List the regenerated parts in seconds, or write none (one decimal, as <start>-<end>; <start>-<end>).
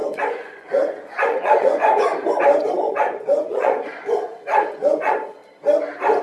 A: 0.0-2.1; 2.7-5.4